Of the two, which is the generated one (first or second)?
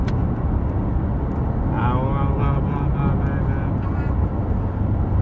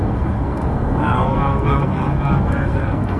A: second